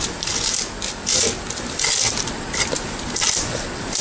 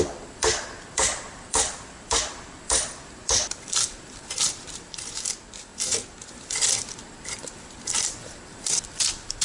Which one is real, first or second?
first